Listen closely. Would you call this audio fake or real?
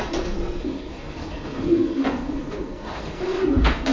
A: fake